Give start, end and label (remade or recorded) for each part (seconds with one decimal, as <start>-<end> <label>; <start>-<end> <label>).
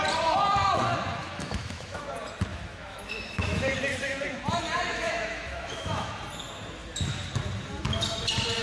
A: 0.0-1.2 recorded; 1.2-2.0 remade; 2.0-2.5 recorded; 2.5-3.7 remade; 3.7-4.9 recorded; 4.9-6.1 remade; 6.1-8.6 recorded